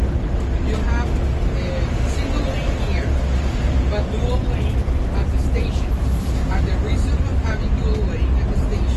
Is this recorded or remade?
recorded